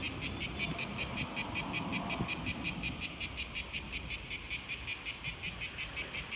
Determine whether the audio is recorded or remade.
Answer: recorded